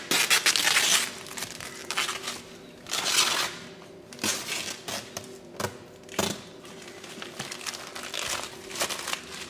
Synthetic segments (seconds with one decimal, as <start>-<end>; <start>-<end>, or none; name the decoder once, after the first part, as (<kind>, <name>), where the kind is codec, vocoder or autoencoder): none